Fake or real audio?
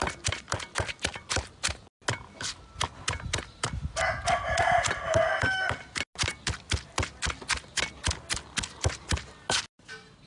real